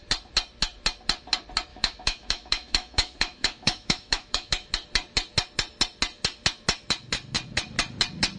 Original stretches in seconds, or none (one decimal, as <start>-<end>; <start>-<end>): 0.0-1.7; 4.5-8.4